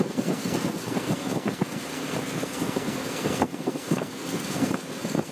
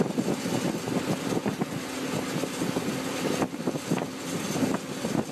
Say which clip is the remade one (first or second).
first